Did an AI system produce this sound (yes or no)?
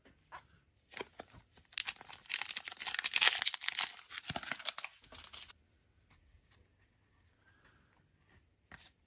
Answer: no